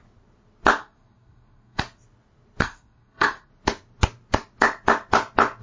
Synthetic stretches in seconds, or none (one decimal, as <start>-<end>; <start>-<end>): 0.8-1.8; 2.6-3.5